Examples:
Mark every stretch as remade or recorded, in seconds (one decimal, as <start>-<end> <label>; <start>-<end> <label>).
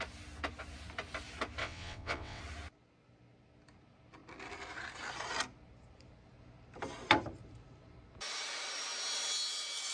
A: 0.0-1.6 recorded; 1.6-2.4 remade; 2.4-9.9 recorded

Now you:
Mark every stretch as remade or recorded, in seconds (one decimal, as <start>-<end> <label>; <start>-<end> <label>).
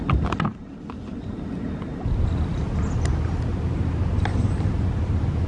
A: 0.0-5.5 recorded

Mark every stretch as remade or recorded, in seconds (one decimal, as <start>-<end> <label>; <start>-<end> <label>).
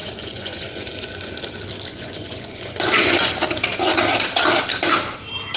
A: 0.0-1.3 remade; 1.3-1.9 recorded; 1.9-3.3 remade; 3.3-5.6 recorded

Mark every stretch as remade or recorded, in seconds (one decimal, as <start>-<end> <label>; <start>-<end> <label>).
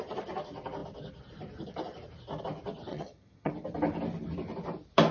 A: 0.0-2.9 recorded; 2.9-3.5 remade; 3.5-5.1 recorded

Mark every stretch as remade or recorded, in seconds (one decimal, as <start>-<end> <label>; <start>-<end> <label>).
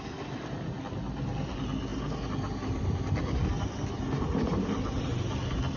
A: 0.0-5.8 recorded